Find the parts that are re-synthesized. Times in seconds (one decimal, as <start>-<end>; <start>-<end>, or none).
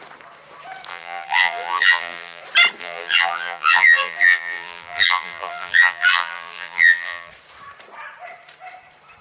0.9-2.4; 2.8-7.3